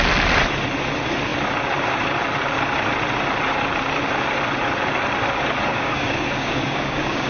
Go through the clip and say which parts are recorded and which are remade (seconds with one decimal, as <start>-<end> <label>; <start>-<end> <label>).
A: 0.0-5.7 recorded; 5.7-7.3 remade